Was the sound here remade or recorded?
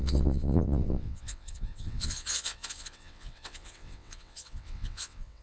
remade